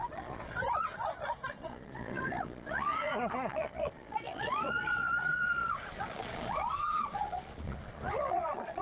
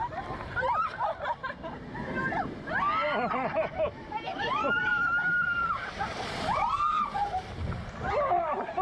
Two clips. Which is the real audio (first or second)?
second